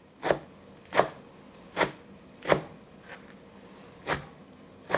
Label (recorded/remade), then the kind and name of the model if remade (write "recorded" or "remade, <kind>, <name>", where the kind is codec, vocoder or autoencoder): recorded